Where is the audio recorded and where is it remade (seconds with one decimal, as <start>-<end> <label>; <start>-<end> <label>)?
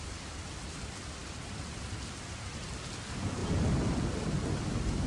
0.0-5.1 recorded